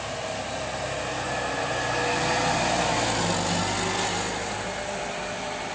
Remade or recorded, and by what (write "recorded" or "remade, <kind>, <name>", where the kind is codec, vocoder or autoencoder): recorded